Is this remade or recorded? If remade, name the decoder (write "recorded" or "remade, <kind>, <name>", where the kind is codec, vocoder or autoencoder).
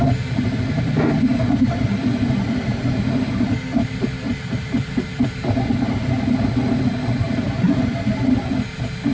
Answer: recorded